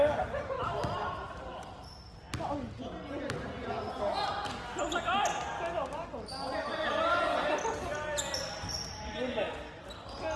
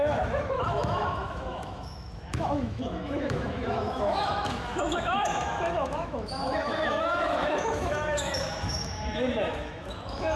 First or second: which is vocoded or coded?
second